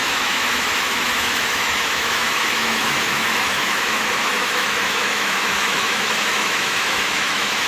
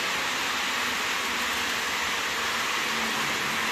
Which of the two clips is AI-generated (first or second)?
first